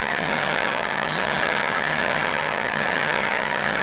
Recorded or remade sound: remade